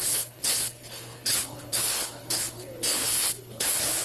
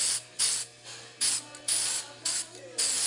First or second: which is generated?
first